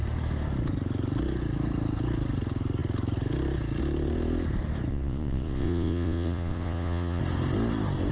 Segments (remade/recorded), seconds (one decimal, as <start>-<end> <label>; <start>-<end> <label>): 0.0-4.9 recorded; 4.9-7.2 remade; 7.2-8.1 recorded